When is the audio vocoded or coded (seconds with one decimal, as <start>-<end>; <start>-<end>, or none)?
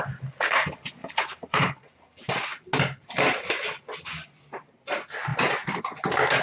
1.0-1.7; 5.3-5.8